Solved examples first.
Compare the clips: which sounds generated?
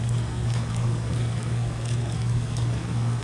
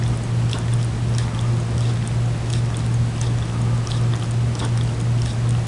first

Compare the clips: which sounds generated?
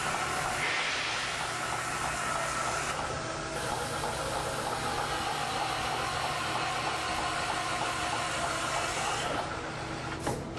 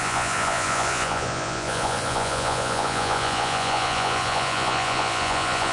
second